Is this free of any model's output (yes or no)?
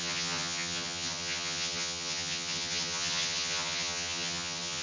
no